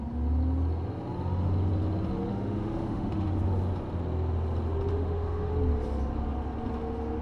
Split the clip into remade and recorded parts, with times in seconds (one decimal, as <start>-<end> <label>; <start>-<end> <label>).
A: 0.0-2.3 recorded; 2.3-3.3 remade; 3.3-4.9 recorded; 4.9-5.5 remade; 5.5-7.2 recorded